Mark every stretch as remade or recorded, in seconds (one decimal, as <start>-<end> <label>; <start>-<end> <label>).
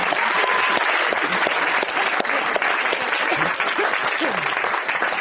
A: 0.0-1.8 remade; 1.8-3.3 recorded; 3.3-4.1 remade; 4.1-5.2 recorded